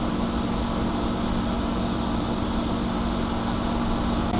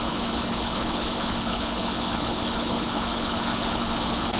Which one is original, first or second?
first